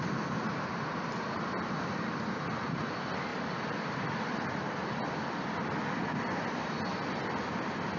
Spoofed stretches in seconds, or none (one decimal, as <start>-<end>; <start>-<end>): none